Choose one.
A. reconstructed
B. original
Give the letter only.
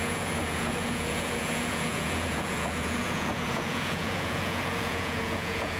A